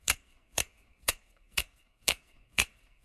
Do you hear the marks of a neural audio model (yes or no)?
yes